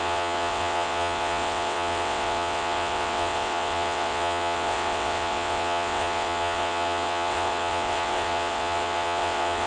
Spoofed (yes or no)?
yes